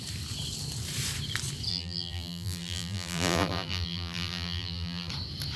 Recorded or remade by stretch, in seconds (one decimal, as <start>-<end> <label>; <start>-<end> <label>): 0.0-1.7 recorded; 1.7-5.1 remade; 5.1-5.6 recorded